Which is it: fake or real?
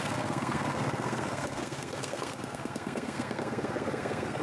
fake